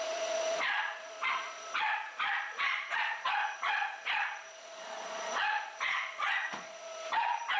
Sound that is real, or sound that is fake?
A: fake